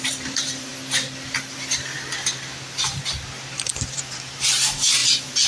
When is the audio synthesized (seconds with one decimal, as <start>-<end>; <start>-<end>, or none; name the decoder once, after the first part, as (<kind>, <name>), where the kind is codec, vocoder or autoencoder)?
0.0-0.7 (vocoder, BigVGAN v2); 3.4-5.5